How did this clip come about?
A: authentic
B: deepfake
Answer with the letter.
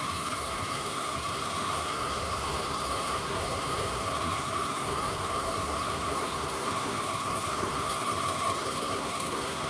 B